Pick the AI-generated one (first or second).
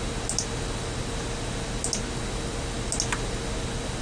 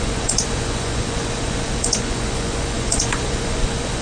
second